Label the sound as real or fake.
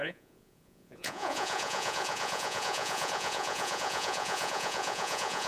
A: fake